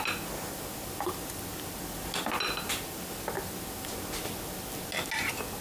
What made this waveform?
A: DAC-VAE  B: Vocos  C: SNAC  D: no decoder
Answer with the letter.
D